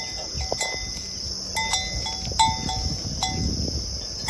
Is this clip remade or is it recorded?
recorded